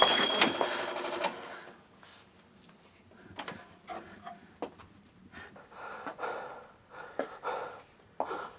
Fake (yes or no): no